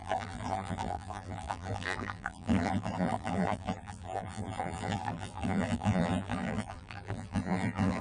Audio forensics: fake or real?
fake